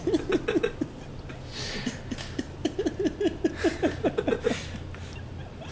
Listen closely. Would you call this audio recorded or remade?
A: recorded